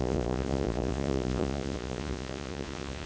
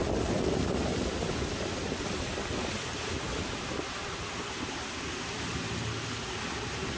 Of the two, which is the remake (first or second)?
first